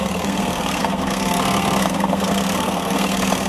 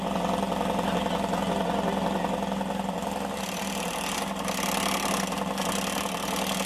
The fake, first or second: first